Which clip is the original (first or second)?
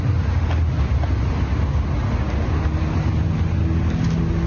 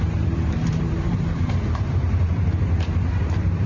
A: first